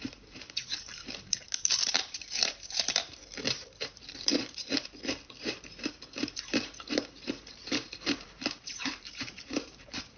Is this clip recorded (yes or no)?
no